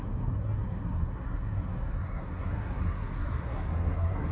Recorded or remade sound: remade